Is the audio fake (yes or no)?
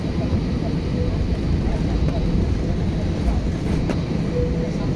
no